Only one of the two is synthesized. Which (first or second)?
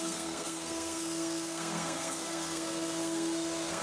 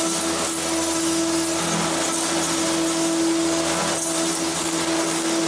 first